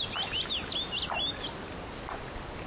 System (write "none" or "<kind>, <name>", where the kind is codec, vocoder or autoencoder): none